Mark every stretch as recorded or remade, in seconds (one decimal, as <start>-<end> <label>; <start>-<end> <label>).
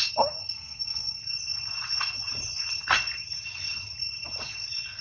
0.0-0.4 recorded; 0.4-1.2 remade; 1.2-5.0 recorded